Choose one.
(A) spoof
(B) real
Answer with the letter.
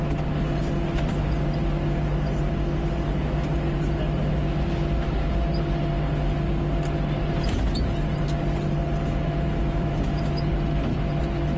B